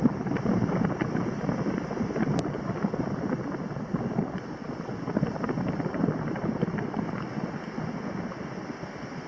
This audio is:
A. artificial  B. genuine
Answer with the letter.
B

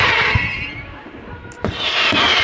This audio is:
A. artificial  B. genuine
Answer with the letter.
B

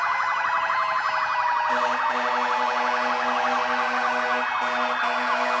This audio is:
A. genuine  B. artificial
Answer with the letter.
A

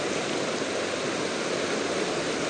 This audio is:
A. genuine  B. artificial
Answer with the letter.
A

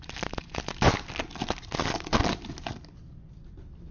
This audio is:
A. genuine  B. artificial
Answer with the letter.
A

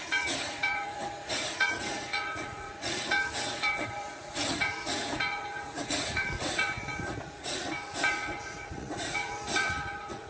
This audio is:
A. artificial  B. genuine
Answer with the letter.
A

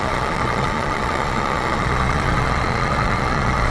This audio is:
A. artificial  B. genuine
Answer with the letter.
A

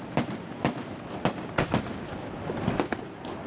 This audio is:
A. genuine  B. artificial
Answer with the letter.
A